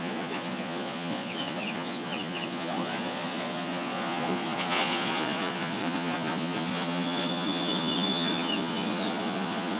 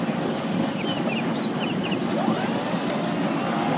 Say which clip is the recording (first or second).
second